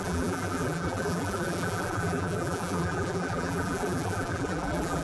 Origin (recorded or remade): remade